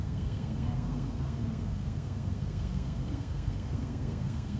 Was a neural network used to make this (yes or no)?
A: yes